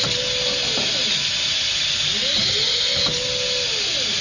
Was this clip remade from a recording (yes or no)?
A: no